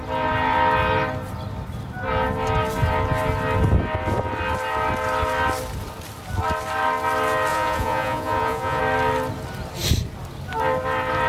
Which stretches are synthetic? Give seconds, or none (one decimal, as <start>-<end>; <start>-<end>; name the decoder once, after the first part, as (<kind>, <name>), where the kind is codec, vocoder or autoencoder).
7.5-8.8 (vocoder, Vocos)